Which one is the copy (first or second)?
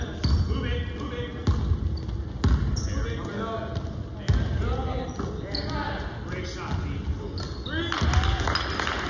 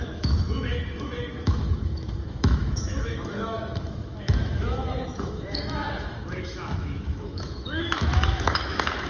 second